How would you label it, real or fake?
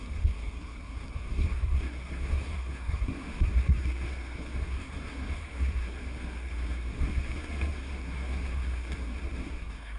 fake